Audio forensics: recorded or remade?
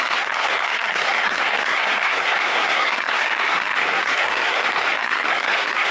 remade